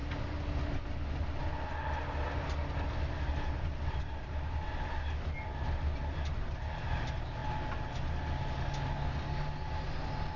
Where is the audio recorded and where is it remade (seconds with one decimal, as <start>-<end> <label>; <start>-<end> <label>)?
0.0-10.4 recorded